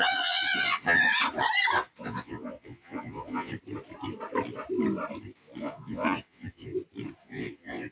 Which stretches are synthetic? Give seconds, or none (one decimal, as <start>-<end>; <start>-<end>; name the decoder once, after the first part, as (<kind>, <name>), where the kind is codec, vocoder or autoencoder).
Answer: 0.0-1.1 (vocoder, Vocos); 2.0-3.5; 5.6-6.7; 7.2-7.9